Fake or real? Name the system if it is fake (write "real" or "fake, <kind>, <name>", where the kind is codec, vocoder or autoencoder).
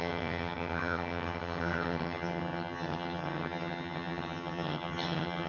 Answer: fake, vocoder, HiFi-GAN